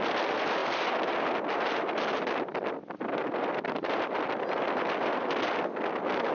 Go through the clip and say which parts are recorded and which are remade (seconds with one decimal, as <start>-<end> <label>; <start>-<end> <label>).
0.0-6.3 recorded